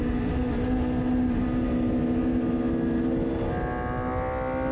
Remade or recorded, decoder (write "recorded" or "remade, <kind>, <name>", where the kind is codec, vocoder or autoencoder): recorded